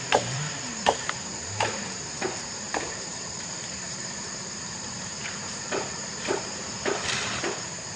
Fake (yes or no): yes